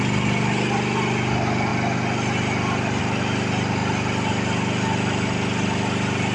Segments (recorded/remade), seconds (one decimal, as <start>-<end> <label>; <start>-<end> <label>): 0.0-6.3 recorded